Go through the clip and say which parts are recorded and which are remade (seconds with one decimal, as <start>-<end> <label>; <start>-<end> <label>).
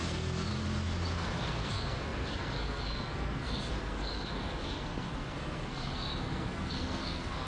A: 0.0-0.5 remade; 0.5-1.1 recorded; 1.1-7.5 remade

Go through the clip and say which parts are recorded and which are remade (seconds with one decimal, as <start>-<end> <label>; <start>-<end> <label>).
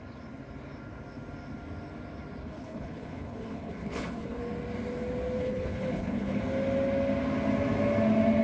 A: 0.0-2.4 recorded; 2.4-4.4 remade; 4.4-5.4 recorded; 5.4-6.4 remade; 6.4-8.4 recorded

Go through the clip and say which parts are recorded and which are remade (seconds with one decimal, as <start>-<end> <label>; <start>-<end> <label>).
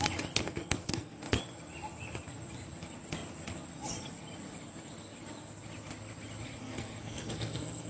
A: 0.0-0.4 recorded; 0.4-1.2 remade; 1.2-6.6 recorded; 6.6-7.9 remade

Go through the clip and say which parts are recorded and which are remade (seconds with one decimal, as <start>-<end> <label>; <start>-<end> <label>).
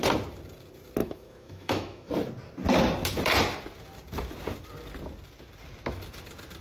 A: 0.0-1.0 recorded; 1.0-2.1 remade; 2.1-6.6 recorded